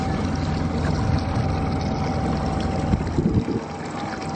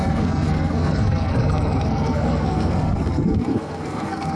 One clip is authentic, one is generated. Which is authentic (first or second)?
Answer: first